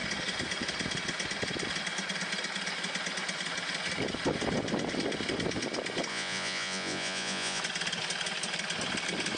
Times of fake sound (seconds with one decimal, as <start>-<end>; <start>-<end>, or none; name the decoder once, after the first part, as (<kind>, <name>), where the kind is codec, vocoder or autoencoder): 6.1-7.6 (vocoder, Vocos)